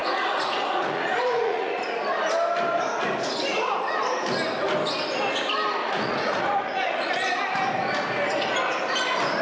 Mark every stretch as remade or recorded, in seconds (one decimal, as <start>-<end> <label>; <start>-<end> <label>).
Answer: 0.0-1.8 remade; 1.8-5.8 recorded; 5.8-7.1 remade; 7.1-9.4 recorded